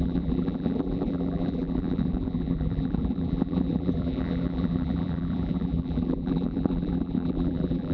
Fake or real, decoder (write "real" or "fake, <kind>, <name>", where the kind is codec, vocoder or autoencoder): fake, vocoder, BigVGAN v2